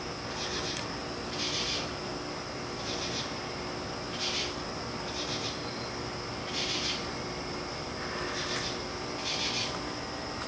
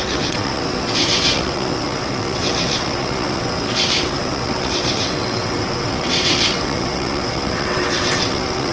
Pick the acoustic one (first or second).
first